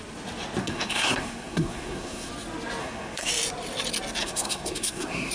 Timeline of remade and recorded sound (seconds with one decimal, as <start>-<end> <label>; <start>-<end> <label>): 0.0-0.6 recorded; 0.6-2.3 remade; 2.3-2.8 recorded; 2.8-3.3 remade; 3.3-4.2 recorded; 4.2-5.3 remade